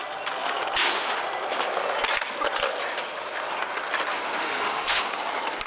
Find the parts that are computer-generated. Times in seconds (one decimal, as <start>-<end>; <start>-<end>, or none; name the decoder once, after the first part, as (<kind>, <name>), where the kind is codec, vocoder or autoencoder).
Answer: 4.4-5.0 (autoencoder, DAC-VAE)